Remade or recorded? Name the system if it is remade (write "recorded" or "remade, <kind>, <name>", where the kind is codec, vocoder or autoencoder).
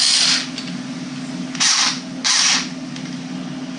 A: recorded